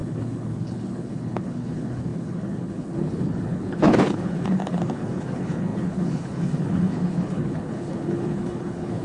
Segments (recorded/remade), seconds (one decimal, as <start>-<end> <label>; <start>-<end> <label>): 0.0-9.0 remade